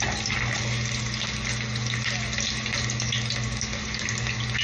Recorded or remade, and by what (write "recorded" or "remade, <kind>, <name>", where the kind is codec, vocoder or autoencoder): recorded